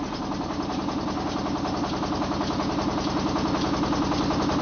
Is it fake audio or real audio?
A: real